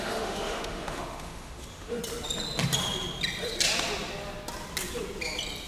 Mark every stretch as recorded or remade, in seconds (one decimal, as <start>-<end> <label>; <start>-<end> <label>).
0.0-2.0 remade; 2.0-5.7 recorded